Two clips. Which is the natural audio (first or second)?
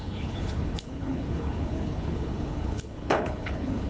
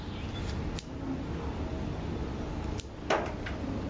second